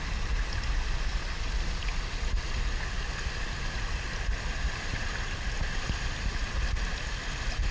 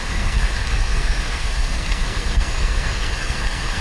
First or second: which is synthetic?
second